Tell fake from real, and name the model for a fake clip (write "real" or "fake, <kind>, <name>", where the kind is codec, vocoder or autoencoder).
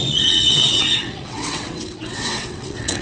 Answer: fake, vocoder, WaveNeXt